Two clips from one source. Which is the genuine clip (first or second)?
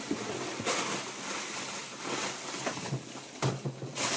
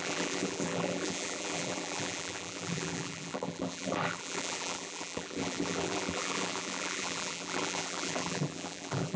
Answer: first